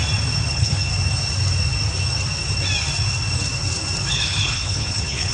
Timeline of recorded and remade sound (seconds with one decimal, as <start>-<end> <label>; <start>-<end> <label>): 0.0-0.5 recorded; 0.5-0.9 remade; 0.9-4.1 recorded; 4.1-5.3 remade